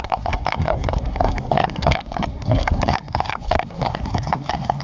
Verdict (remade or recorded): remade